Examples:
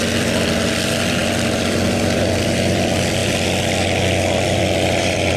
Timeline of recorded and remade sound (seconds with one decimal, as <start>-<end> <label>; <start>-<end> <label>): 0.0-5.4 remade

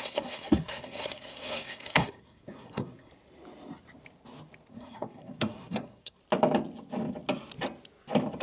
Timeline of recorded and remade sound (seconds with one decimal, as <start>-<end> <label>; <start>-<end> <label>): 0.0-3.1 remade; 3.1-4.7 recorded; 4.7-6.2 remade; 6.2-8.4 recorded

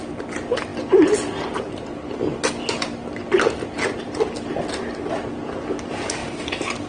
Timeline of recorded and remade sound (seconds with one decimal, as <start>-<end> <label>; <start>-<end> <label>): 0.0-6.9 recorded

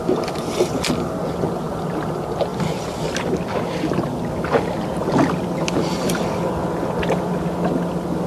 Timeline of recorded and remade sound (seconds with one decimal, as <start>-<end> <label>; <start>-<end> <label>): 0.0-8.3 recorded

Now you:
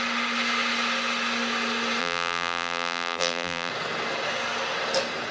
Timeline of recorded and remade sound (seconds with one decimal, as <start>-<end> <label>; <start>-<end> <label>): 0.0-2.0 recorded; 2.0-3.7 remade; 3.7-5.3 recorded

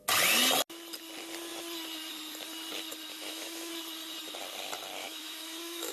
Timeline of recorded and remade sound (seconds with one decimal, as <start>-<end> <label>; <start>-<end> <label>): 0.0-3.1 recorded; 3.1-3.7 remade; 3.7-5.0 recorded; 5.0-5.9 remade

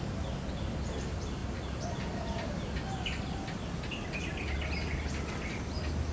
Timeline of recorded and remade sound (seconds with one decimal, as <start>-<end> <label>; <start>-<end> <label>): 0.0-6.1 recorded